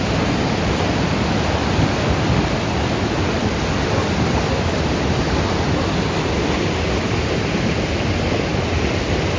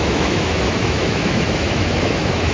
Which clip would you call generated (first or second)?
second